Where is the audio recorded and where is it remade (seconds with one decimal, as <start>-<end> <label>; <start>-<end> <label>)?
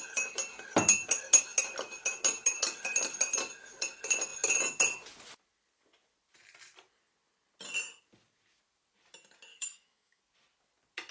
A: 0.0-9.5 recorded; 9.5-10.2 remade; 10.2-11.1 recorded